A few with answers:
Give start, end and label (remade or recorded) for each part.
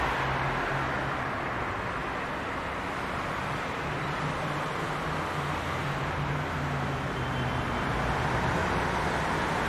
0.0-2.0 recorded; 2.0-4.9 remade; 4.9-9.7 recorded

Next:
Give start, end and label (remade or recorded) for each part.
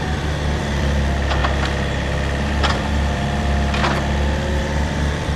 0.0-1.4 remade; 1.4-2.7 recorded; 2.7-3.8 remade; 3.8-4.6 recorded; 4.6-5.4 remade